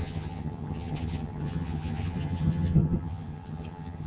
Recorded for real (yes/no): no